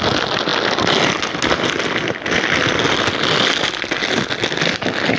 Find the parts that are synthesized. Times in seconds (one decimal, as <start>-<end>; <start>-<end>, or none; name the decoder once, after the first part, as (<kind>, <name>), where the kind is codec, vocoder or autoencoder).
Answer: none